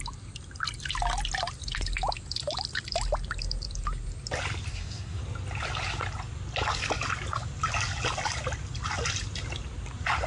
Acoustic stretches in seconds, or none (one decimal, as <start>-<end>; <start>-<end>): 0.0-4.7; 5.2-10.3